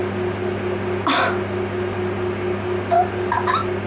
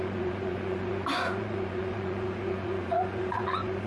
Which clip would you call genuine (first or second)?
first